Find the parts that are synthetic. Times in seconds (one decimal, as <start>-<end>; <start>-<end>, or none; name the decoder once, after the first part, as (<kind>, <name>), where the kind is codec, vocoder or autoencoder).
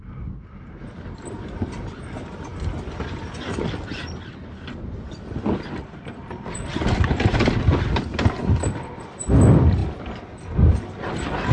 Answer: none